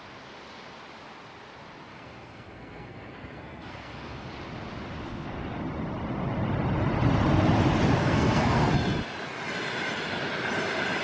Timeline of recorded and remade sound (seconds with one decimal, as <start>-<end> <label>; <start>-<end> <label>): 0.0-1.9 recorded; 1.9-4.3 remade; 4.3-8.0 recorded; 8.0-8.7 remade; 8.7-11.0 recorded